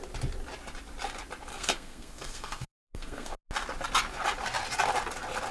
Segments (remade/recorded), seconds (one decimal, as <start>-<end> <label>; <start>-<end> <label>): 0.0-1.5 recorded; 1.5-3.4 remade; 3.4-5.5 recorded